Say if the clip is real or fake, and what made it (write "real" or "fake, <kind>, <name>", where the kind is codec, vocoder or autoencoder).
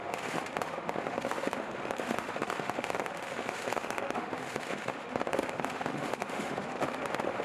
fake, autoencoder, DAC-VAE